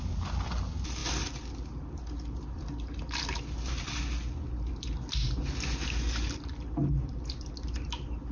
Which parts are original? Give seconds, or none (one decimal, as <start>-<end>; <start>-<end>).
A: 0.0-8.3